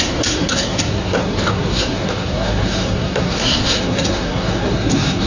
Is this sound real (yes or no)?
no